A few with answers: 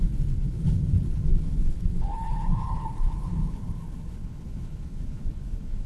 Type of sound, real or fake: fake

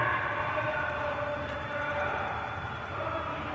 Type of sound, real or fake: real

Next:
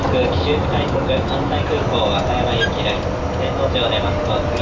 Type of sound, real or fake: real